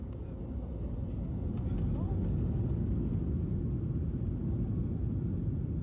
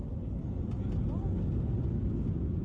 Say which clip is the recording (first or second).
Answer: first